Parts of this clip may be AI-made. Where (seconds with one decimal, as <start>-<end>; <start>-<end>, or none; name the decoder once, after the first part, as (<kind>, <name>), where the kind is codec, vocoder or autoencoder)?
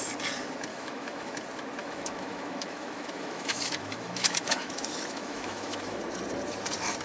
0.7-1.3 (autoencoder, DAC-VAE); 1.8-6.0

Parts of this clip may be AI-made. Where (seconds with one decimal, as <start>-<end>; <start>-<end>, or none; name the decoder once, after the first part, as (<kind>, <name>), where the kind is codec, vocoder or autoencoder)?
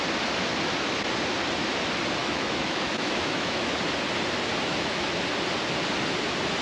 2.2-3.7 (autoencoder, DAC-VAE); 4.7-5.2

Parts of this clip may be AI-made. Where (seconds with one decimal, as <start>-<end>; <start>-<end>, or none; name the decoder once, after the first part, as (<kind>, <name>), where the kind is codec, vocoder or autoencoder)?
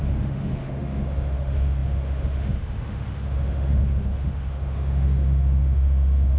0.0-6.4 (autoencoder, DAC-VAE)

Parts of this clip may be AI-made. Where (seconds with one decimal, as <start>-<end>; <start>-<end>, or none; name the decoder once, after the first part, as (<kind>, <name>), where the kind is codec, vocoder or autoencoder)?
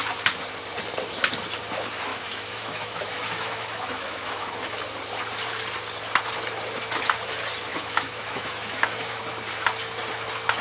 2.1-4.5 (autoencoder, DAC-VAE); 7.7-9.2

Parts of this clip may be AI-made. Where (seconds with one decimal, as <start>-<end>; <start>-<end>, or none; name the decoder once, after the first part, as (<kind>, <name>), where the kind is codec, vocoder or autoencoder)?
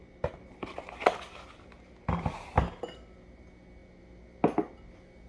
none